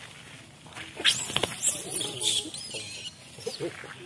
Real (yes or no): yes